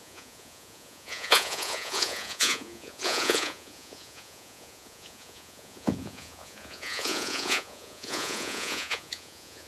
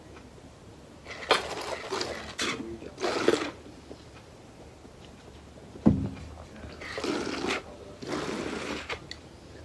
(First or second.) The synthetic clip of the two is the first